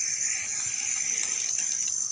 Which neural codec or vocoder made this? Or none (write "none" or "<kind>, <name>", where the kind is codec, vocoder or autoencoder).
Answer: none